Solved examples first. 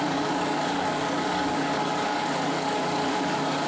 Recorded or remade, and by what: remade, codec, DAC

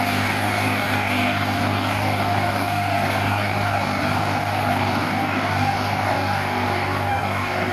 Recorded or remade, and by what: remade, codec, DAC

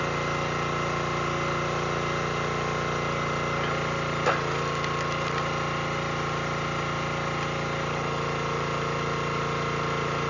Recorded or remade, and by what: recorded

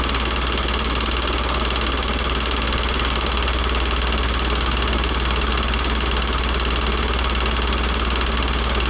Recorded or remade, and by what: recorded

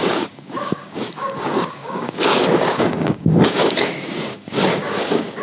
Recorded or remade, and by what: remade, codec, DAC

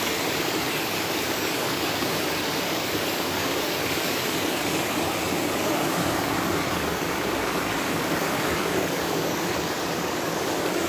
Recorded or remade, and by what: remade, codec, DAC